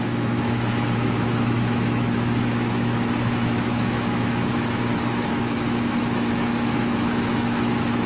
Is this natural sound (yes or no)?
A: no